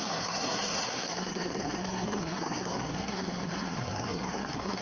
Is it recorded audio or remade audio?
remade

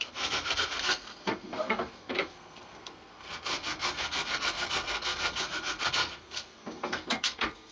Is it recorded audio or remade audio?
remade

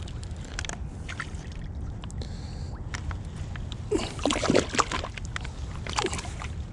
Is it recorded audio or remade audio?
recorded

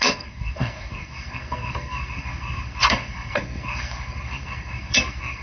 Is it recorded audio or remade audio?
remade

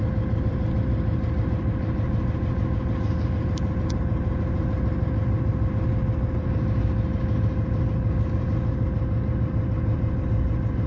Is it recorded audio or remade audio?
recorded